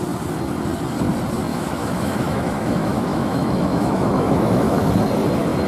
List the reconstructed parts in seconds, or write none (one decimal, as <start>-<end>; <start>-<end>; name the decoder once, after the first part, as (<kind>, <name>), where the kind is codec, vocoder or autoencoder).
1.5-4.9 (autoencoder, DAC-VAE)